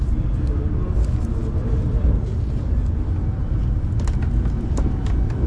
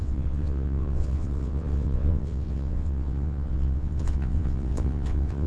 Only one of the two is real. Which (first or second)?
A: first